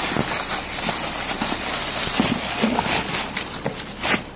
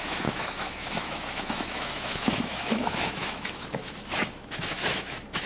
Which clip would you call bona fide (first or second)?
first